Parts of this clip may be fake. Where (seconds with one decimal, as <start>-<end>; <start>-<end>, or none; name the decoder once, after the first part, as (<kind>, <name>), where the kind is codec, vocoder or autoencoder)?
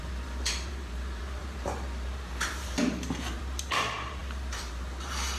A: 0.0-5.4 (vocoder, BigVGAN v2)